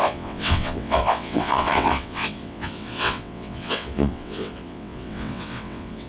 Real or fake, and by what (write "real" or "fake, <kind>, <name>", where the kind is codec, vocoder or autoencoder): fake, vocoder, WaveNeXt